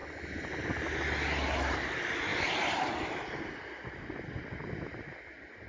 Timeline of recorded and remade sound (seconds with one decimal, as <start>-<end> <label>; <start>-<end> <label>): 0.0-5.7 recorded